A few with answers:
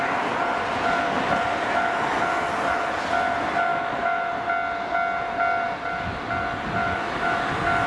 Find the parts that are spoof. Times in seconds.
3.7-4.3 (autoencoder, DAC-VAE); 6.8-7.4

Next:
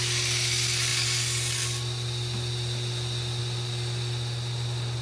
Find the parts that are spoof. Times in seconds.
none

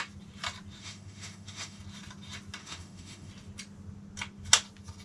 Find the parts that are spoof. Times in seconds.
0.8-1.8 (autoencoder, DAC-VAE); 2.6-3.3

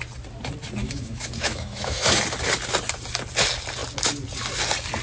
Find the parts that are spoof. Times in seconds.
0.8-2.2 (autoencoder, DAC-VAE)